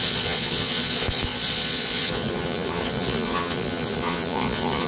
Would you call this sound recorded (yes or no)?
no